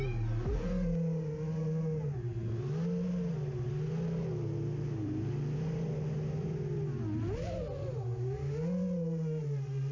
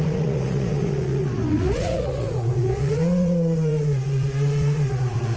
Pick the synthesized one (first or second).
second